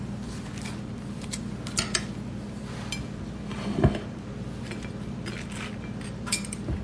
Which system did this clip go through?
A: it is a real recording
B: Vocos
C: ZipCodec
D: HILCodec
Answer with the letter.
A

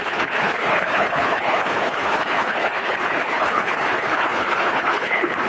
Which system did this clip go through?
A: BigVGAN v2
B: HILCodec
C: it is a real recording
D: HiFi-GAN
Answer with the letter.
B